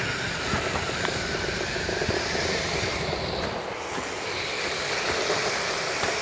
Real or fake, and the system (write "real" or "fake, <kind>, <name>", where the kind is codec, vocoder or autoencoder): real